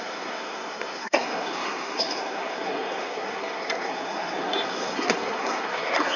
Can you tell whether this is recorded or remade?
remade